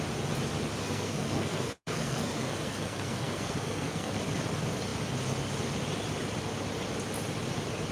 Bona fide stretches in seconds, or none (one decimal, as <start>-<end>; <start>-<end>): 0.0-0.8; 4.2-7.9